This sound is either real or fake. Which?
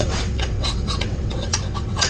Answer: fake